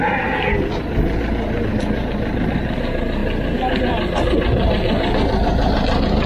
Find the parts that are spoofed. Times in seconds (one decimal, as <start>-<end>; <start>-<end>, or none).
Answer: none